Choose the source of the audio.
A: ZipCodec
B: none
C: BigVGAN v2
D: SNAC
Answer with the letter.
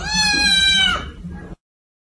C